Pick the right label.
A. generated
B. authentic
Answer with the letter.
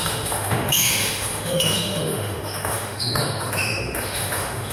A